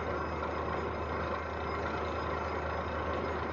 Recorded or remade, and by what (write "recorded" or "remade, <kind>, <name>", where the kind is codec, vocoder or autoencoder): recorded